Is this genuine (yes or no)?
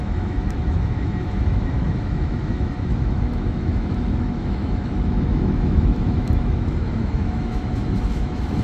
no